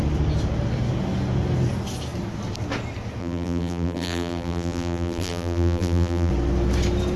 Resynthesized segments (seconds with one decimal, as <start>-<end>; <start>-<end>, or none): 3.2-6.3